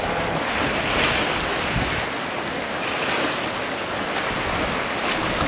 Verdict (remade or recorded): recorded